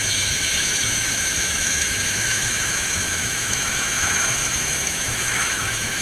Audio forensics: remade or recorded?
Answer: remade